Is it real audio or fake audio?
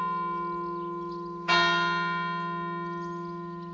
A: real